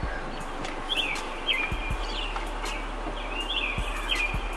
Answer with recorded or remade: recorded